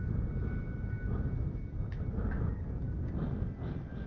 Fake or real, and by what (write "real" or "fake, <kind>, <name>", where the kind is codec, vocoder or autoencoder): real